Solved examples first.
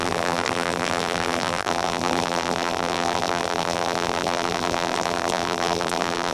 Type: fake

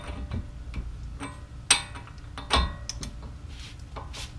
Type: real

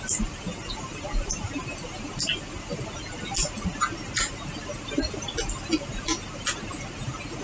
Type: real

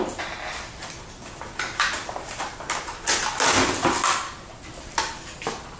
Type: real